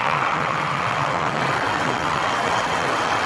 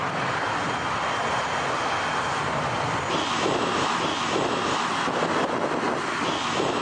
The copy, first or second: first